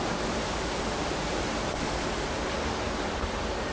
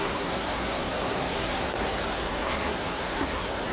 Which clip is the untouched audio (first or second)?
first